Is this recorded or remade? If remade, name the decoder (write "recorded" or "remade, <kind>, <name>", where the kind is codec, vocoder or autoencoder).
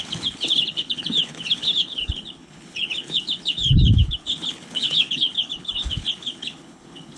remade, codec, HILCodec